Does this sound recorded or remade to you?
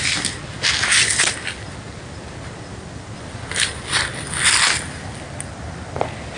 recorded